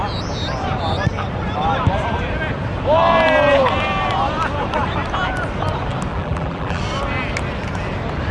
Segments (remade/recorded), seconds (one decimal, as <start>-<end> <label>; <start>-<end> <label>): 0.0-6.1 recorded; 6.1-6.8 remade; 6.8-8.3 recorded